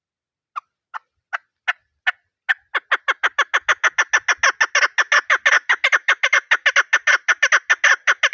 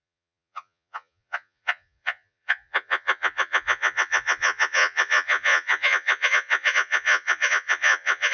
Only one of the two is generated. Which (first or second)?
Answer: second